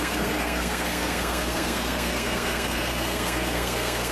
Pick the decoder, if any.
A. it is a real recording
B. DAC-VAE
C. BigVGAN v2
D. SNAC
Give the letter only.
D